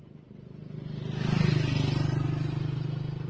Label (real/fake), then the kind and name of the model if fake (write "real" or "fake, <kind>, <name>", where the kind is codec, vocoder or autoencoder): real